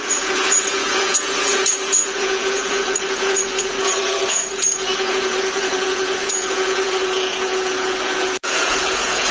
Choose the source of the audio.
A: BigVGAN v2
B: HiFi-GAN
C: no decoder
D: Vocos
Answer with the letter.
D